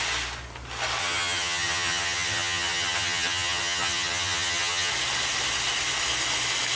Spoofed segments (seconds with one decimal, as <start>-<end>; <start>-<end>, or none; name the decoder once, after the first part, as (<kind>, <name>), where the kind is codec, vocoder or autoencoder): 1.0-4.9 (vocoder, HiFi-GAN)